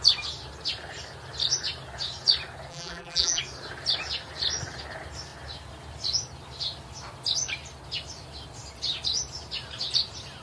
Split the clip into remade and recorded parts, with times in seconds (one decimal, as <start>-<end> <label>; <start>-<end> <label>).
0.0-2.7 recorded; 2.7-3.4 remade; 3.4-10.4 recorded